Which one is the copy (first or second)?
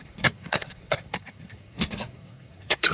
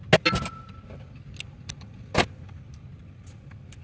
first